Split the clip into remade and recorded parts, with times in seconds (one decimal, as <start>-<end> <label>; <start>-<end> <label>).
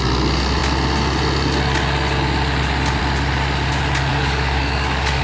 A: 0.0-4.1 recorded; 4.1-5.2 remade